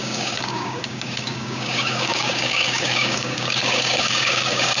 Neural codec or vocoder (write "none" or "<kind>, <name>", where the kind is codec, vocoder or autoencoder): codec, DAC